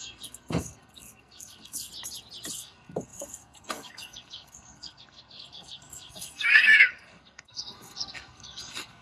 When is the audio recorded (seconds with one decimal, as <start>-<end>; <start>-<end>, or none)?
1.9-2.5